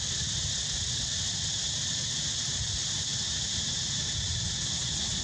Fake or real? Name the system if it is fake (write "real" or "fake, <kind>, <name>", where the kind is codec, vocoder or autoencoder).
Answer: real